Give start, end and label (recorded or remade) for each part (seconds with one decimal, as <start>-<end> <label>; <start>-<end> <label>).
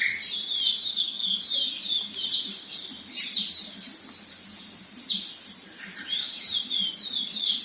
0.0-0.9 recorded; 0.9-1.4 remade; 1.4-7.6 recorded